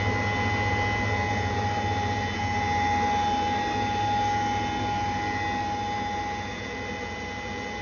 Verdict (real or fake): real